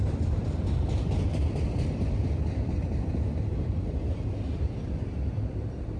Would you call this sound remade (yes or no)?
yes